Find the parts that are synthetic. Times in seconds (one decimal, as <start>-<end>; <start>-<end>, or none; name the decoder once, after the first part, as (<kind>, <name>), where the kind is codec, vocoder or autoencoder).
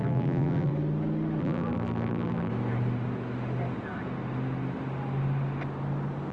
0.0-0.7 (vocoder, BigVGAN v2); 1.4-2.5